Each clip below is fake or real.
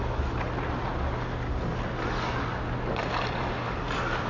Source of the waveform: real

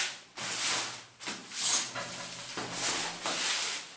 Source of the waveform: real